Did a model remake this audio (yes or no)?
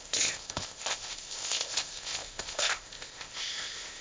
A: yes